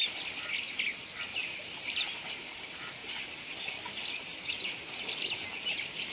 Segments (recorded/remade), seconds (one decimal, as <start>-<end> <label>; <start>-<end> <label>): 0.0-1.3 recorded; 1.3-2.2 remade; 2.2-3.0 recorded; 3.0-3.6 remade; 3.6-4.3 recorded; 4.3-4.9 remade; 4.9-6.1 recorded